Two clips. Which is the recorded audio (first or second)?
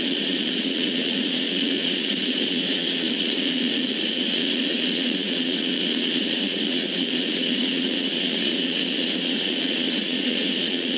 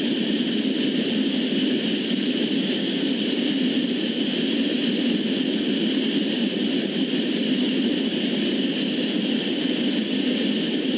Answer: second